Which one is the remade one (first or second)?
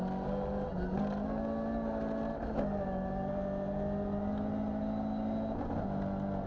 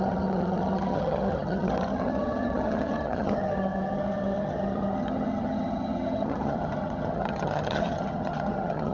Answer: second